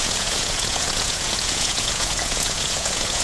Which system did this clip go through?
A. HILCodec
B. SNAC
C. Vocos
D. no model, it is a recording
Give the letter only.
C